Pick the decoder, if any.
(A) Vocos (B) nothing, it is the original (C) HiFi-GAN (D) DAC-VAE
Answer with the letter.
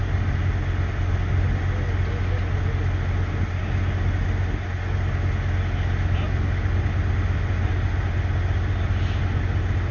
B